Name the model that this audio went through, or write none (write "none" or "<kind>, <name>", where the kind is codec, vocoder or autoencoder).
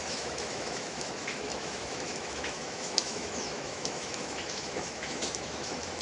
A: autoencoder, DAC-VAE